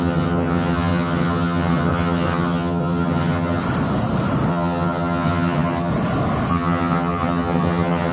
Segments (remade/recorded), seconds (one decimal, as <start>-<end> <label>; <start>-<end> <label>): 0.0-3.6 remade; 3.6-4.5 recorded; 4.5-5.9 remade; 5.9-6.5 recorded; 6.5-8.1 remade